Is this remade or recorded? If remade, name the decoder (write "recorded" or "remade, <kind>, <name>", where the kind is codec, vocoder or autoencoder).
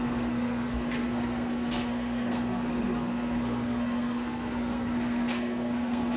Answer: remade, codec, SNAC